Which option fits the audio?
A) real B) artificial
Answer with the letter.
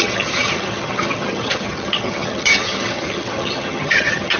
B